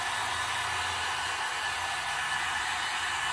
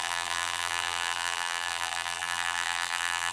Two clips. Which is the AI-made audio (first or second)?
second